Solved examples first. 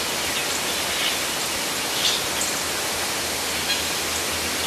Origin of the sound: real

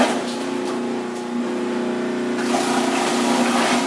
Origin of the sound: real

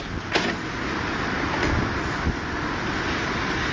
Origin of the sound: real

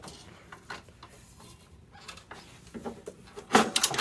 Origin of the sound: real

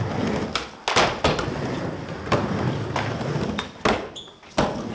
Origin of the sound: real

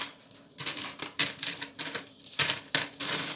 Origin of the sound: real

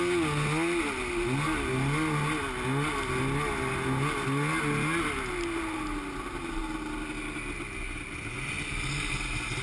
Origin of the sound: real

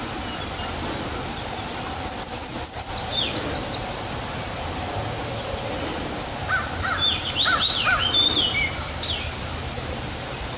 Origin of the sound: real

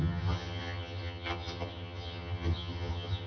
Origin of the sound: fake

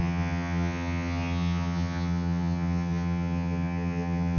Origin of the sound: fake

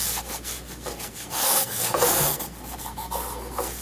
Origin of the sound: fake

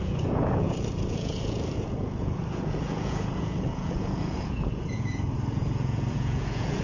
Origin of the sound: fake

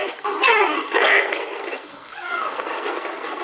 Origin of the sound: fake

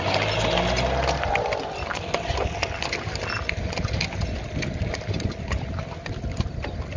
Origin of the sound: real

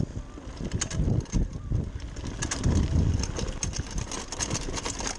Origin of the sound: real